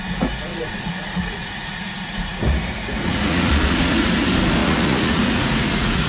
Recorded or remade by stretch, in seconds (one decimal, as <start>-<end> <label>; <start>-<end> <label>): 0.0-0.5 recorded; 0.5-4.1 remade; 4.1-4.6 recorded; 4.6-6.1 remade